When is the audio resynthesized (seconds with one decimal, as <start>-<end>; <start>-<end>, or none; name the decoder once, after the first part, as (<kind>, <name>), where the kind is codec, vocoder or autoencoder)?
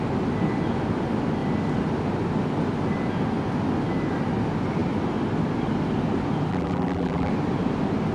6.5-7.3 (vocoder, BigVGAN v2)